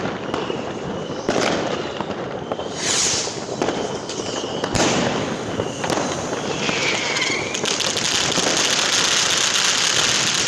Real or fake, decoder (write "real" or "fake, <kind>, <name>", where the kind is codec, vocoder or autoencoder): real